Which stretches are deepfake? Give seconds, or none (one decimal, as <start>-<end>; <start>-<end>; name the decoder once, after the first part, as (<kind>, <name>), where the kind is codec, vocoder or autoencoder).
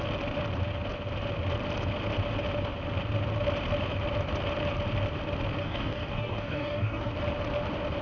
5.6-7.1 (codec, DAC)